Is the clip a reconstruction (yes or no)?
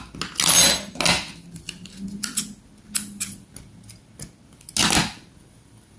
no